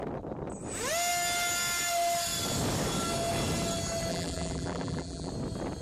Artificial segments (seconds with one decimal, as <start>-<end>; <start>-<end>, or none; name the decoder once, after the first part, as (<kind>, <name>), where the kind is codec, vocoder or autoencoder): 4.1-5.3 (vocoder, BigVGAN v2)